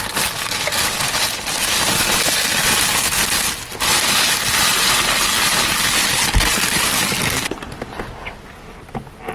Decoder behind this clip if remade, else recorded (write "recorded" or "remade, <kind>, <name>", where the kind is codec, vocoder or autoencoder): recorded